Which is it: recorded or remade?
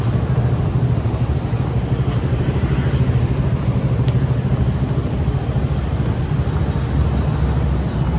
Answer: recorded